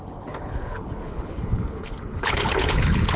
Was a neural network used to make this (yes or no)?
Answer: yes